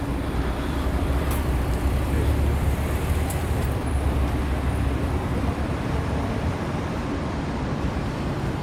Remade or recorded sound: remade